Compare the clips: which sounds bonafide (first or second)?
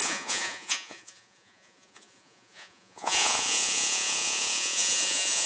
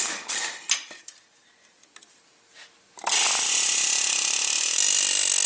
second